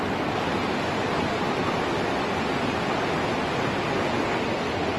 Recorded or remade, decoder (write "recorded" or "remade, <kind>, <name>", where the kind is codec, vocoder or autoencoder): recorded